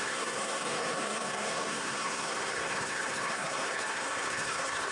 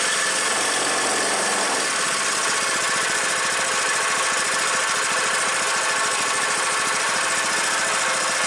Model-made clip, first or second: first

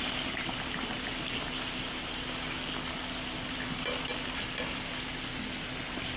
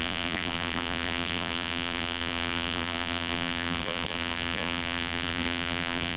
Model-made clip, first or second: second